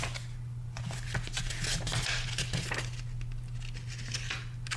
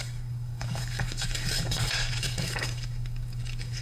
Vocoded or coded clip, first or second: second